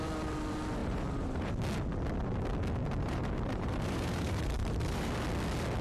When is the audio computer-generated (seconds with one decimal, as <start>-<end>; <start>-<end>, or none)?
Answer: 0.8-1.5; 2.8-5.1